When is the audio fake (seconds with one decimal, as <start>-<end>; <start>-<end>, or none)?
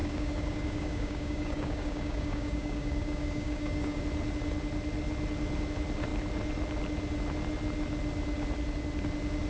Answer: 0.0-4.0